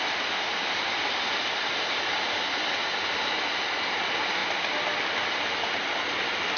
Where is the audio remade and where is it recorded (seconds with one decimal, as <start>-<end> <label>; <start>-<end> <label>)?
0.0-6.6 recorded